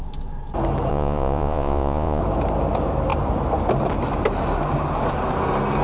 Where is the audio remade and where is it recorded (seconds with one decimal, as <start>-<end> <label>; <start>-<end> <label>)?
0.0-0.9 recorded; 0.9-2.2 remade; 2.2-5.8 recorded